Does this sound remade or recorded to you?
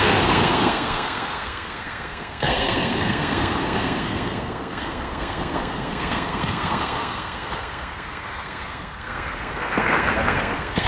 remade